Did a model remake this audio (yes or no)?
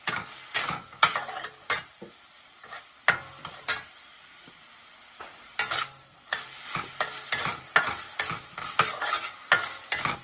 no